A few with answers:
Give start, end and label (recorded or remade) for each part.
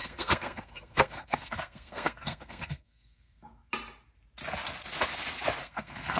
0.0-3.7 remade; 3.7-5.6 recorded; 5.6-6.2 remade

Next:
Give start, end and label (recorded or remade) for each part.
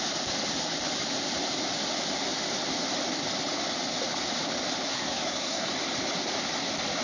0.0-4.9 recorded; 4.9-5.7 remade; 5.7-7.0 recorded